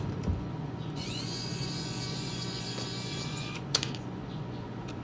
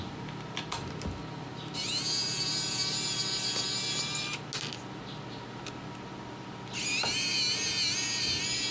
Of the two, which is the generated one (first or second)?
first